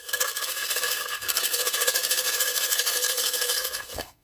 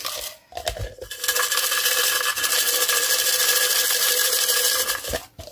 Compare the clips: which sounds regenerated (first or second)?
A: first